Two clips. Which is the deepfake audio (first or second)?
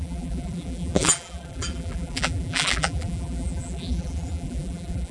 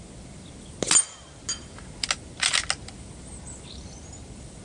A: first